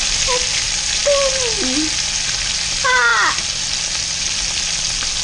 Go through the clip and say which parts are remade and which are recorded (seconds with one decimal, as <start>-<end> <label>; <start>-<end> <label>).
0.0-5.2 recorded